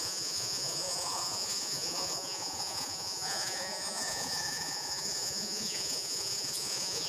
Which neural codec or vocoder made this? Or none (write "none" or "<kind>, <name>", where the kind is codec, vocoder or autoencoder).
vocoder, Vocos